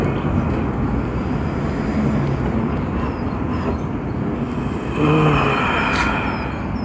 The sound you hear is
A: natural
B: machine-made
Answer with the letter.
A